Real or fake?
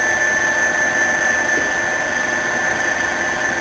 real